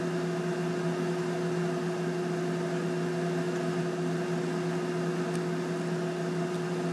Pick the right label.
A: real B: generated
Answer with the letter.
A